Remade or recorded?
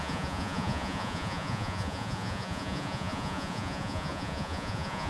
remade